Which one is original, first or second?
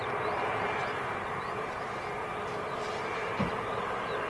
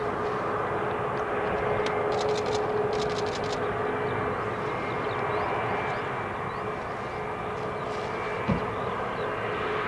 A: second